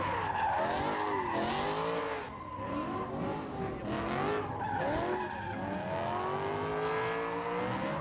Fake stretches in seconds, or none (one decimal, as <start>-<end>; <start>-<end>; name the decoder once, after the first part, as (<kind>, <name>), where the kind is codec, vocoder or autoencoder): none